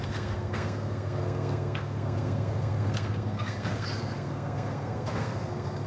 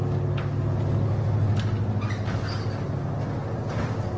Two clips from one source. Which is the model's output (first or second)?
first